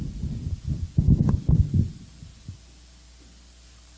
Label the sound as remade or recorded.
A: recorded